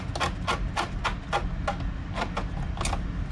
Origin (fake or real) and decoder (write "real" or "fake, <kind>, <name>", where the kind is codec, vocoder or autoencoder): real